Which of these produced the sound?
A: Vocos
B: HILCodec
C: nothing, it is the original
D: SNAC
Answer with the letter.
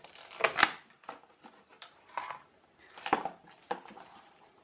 C